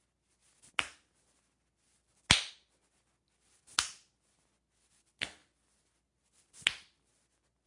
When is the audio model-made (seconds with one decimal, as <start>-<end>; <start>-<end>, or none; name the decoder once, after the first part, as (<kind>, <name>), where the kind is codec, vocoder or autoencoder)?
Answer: none